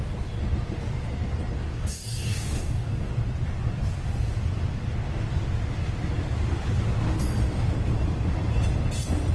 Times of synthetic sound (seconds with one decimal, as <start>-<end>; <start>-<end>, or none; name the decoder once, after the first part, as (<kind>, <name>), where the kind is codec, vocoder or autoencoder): 1.7-3.1 (codec, DAC)